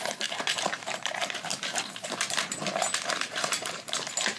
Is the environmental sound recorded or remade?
remade